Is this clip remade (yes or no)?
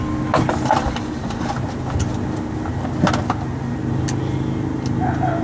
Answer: no